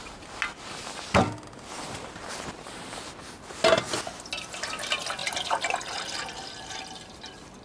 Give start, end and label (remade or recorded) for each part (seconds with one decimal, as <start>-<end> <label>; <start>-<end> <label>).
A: 0.0-7.6 recorded